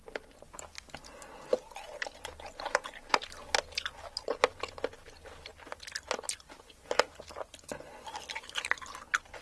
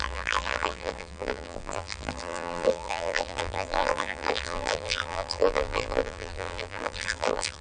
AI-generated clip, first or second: second